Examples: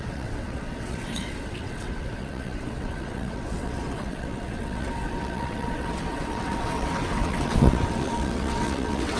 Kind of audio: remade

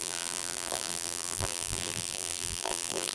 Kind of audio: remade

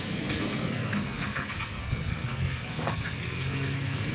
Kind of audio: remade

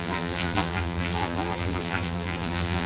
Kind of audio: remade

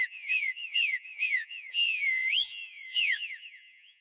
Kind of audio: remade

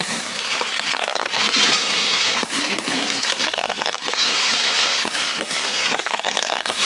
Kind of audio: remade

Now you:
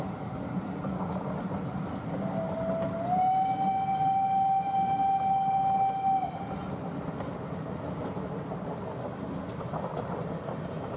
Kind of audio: recorded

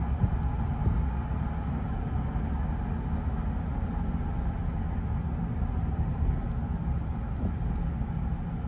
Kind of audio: recorded